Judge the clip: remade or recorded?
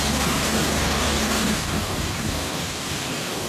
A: remade